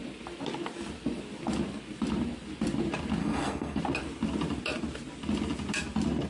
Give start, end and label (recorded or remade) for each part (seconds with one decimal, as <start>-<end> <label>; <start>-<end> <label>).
0.0-3.2 recorded; 3.2-3.8 remade; 3.8-6.3 recorded